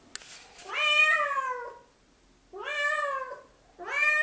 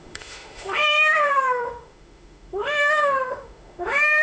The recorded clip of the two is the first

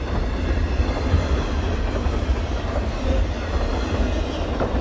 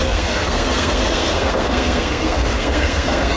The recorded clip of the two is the first